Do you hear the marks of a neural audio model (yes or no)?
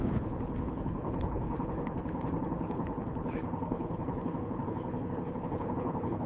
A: yes